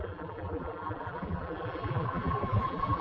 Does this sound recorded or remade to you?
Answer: remade